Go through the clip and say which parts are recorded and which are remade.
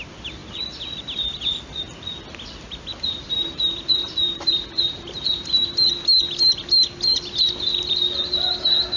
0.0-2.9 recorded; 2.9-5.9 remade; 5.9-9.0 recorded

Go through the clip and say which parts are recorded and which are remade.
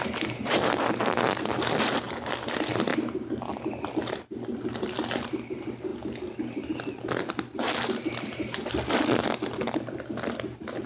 0.0-2.9 remade; 2.9-3.9 recorded; 3.9-5.9 remade; 5.9-6.7 recorded; 6.7-10.9 remade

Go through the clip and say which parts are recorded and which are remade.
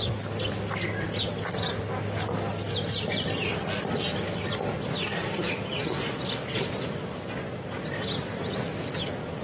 0.0-5.1 recorded; 5.1-6.0 remade; 6.0-9.4 recorded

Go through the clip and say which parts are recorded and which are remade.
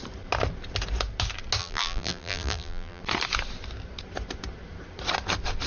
0.0-1.6 recorded; 1.6-3.0 remade; 3.0-5.7 recorded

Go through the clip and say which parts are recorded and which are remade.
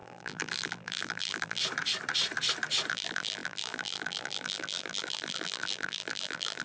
0.0-1.6 remade; 1.6-2.9 recorded; 2.9-6.6 remade